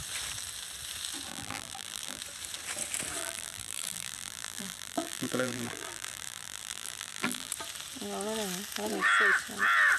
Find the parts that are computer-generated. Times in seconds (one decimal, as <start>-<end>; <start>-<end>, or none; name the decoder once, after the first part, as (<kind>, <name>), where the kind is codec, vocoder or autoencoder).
1.3-2.2 (vocoder, BigVGAN v2); 3.2-7.5